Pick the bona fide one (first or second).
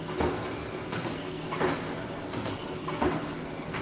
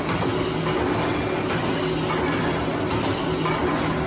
second